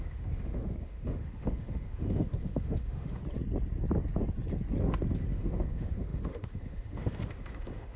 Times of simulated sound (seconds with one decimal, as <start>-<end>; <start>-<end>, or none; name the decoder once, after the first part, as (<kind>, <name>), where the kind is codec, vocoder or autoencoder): 0.0-3.2 (autoencoder, DAC-VAE); 4.8-8.0